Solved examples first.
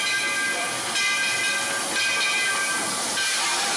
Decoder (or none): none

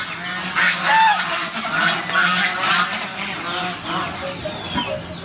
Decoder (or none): none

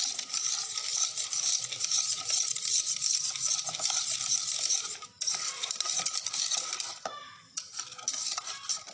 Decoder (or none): none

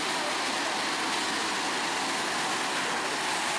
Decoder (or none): none